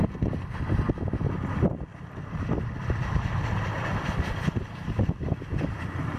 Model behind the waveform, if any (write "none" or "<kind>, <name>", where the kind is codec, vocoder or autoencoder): none